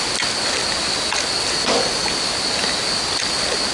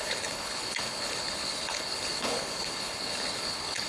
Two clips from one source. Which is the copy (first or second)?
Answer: second